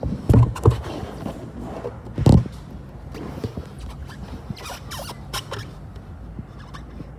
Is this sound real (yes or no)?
yes